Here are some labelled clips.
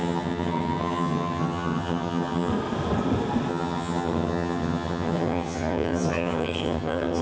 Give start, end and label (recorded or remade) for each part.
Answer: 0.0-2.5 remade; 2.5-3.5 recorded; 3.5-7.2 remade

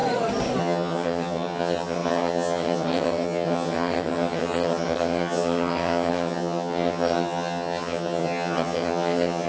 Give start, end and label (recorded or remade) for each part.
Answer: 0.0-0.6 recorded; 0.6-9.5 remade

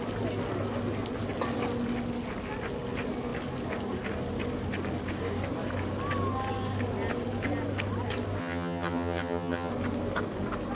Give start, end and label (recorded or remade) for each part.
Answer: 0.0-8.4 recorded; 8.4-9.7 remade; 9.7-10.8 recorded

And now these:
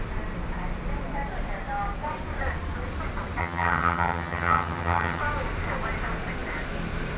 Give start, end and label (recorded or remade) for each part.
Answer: 0.0-3.4 recorded; 3.4-5.2 remade; 5.2-7.2 recorded

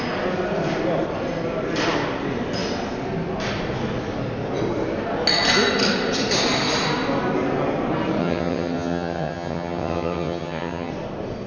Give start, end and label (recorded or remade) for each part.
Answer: 0.0-8.2 recorded; 8.2-10.9 remade; 10.9-11.5 recorded

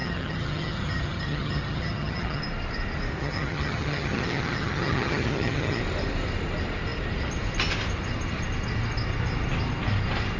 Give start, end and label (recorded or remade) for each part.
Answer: 0.0-2.4 remade; 2.4-3.2 recorded; 3.2-5.8 remade; 5.8-10.4 recorded